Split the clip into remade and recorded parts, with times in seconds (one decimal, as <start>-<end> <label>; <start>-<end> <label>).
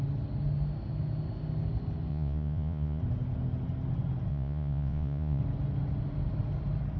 0.0-2.1 recorded; 2.1-3.0 remade; 3.0-4.3 recorded; 4.3-5.4 remade; 5.4-7.0 recorded